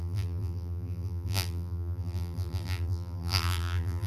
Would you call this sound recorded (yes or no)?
no